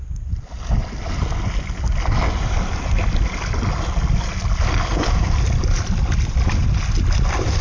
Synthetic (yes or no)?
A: no